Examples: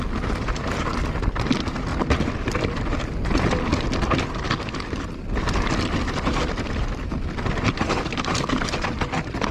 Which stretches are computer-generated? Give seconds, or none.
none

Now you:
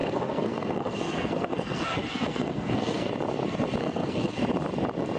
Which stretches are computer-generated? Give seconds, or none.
0.0-3.1 (codec, SNAC); 3.8-4.4

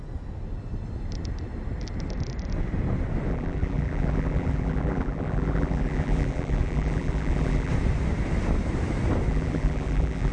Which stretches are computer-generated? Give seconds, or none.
3.3-7.7 (vocoder, BigVGAN v2); 9.3-10.3

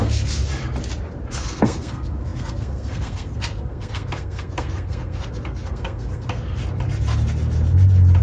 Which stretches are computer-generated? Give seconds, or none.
0.0-0.4 (codec, SNAC); 1.3-6.6

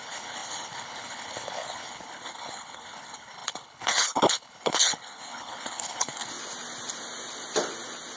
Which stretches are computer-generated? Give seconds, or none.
0.0-6.3 (codec, HILCodec)

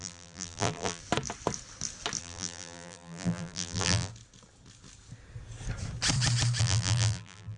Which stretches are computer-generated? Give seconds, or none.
0.0-1.0 (vocoder, BigVGAN v2); 2.2-4.1; 6.6-7.6

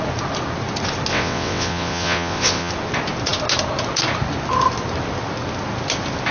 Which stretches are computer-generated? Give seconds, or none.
1.1-2.7 (vocoder, WaveNeXt)